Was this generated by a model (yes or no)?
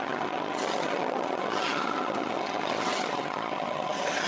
yes